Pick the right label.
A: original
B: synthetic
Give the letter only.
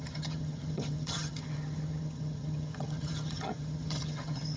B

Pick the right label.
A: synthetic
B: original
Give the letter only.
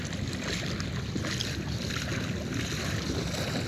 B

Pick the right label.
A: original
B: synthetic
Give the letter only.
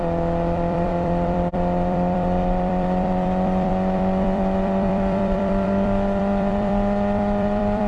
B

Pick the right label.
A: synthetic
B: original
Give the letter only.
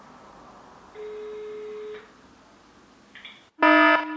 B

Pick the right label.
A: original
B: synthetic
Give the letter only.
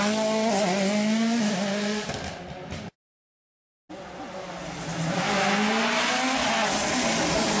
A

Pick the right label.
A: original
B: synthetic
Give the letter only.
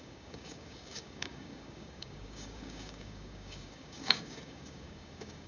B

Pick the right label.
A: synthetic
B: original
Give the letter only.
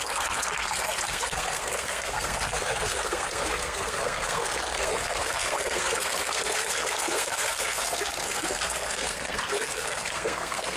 A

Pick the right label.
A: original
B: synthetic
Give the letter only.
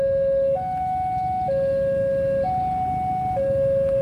A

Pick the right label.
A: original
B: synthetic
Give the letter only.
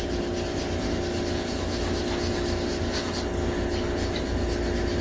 A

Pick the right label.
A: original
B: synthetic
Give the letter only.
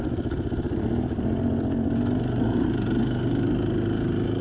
A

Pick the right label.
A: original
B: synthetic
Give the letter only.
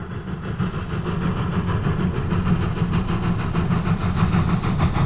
A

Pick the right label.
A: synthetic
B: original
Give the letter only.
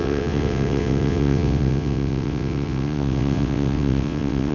A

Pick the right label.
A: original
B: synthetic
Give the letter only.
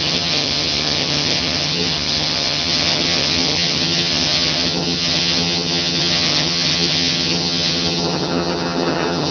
B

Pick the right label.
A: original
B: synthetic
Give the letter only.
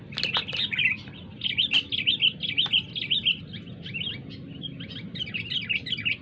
A